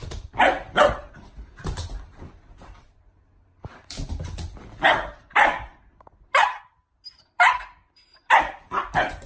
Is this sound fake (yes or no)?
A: no